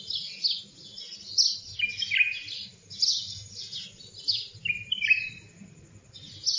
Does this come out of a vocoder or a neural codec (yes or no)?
no